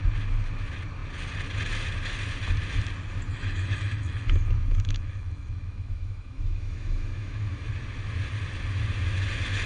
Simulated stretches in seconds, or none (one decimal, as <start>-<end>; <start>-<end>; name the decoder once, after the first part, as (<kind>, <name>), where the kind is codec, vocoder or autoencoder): 3.3-7.7 (autoencoder, DAC-VAE)